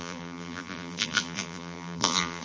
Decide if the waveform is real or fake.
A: fake